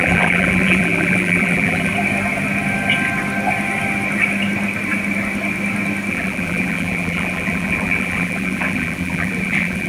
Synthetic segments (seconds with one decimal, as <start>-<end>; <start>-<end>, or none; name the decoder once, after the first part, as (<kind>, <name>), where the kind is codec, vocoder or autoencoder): 0.0-1.9 (vocoder, BigVGAN v2); 6.1-9.9